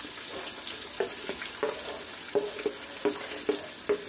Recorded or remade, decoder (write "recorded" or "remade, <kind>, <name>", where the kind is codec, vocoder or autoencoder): recorded